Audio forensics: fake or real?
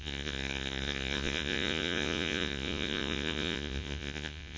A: fake